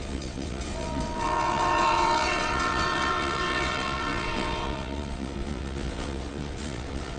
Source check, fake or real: fake